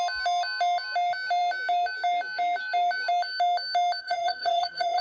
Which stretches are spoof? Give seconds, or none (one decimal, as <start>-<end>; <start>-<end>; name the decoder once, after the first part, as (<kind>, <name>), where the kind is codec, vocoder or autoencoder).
4.0-5.0 (vocoder, HiFi-GAN)